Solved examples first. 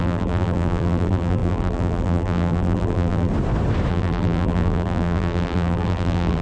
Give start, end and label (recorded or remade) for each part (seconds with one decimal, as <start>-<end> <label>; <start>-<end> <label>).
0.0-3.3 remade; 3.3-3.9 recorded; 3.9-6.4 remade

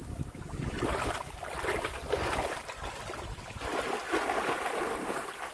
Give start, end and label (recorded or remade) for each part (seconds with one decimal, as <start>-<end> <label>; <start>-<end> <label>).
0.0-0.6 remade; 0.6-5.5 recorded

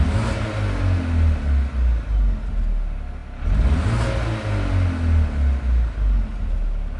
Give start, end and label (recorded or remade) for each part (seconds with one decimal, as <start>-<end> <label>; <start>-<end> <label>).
0.0-7.0 recorded

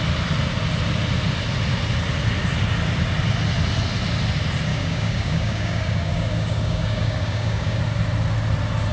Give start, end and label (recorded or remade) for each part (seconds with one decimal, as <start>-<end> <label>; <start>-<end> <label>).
0.0-4.7 recorded; 4.7-7.8 remade; 7.8-8.9 recorded

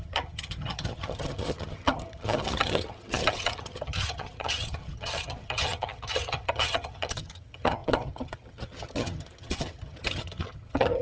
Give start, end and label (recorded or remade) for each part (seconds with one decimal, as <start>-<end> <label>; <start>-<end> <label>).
0.0-11.0 remade

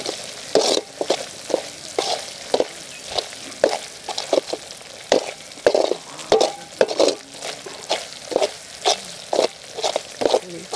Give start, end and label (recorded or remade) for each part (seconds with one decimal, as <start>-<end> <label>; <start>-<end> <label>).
0.0-10.8 recorded

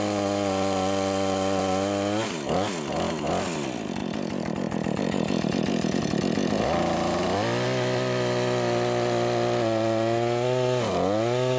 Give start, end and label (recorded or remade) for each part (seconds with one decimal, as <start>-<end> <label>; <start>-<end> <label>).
0.0-4.0 recorded; 4.0-6.0 remade; 6.0-11.6 recorded